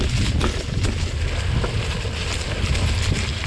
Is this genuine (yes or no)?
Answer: yes